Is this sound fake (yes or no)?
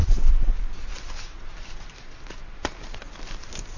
no